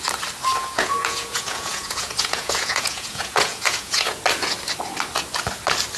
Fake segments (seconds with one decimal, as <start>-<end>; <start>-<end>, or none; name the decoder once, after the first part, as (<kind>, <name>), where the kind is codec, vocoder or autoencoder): 0.6-4.2 (vocoder, Vocos)